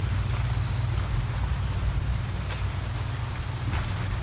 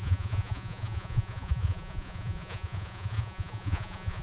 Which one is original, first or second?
first